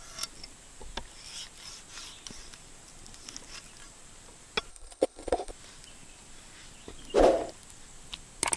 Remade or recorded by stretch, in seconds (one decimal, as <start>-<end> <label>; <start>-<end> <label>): 0.0-4.7 recorded; 4.7-5.5 remade; 5.5-8.6 recorded